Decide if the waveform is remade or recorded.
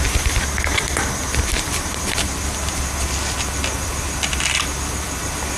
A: recorded